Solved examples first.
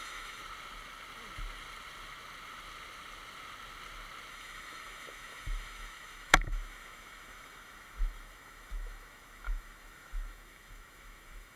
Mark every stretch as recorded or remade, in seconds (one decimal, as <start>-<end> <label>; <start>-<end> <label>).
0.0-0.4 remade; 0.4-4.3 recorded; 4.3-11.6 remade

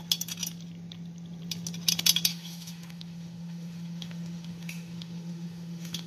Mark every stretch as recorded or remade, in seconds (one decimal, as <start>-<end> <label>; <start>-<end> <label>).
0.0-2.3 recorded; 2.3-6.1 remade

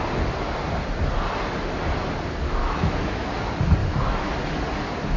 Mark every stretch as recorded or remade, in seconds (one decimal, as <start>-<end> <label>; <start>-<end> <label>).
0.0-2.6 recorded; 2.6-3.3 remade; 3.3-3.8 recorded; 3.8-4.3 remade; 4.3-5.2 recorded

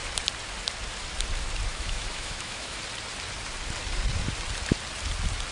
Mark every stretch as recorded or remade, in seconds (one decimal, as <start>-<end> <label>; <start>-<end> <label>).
0.0-1.7 recorded; 1.7-2.8 remade; 2.8-5.5 recorded

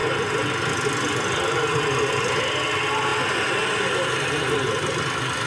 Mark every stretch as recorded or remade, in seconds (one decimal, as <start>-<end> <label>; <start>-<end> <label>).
0.0-5.5 recorded